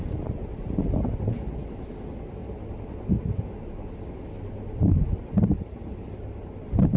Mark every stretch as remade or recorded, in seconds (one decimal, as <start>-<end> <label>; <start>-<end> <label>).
0.0-7.0 recorded